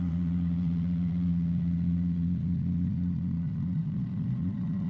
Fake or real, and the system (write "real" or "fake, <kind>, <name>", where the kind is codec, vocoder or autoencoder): fake, vocoder, Vocos